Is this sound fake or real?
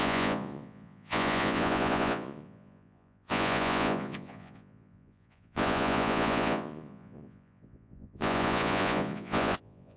fake